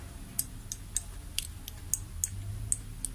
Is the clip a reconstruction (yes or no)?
no